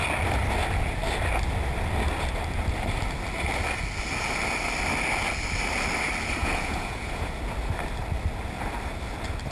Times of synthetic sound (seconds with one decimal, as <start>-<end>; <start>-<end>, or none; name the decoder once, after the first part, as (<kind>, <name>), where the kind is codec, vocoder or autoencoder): 6.4-7.3 (vocoder, Vocos)